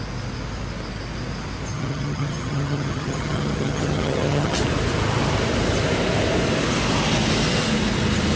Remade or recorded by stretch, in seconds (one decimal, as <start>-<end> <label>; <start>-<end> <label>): 0.0-1.7 recorded; 1.7-4.6 remade; 4.6-8.4 recorded